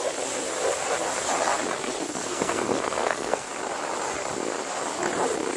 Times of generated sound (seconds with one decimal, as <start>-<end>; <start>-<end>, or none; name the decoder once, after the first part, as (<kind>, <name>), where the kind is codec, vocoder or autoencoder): 2.1-3.5 (codec, SNAC)